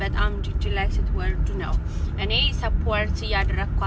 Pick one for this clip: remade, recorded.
recorded